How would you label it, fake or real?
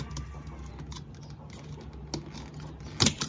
real